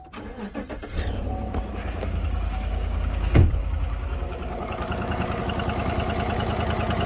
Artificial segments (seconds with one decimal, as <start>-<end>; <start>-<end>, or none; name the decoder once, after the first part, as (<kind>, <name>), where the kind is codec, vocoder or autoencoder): 1.8-5.4 (codec, DAC)